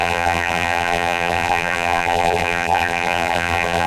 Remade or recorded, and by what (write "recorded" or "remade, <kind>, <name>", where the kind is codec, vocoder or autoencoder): remade, vocoder, BigVGAN v2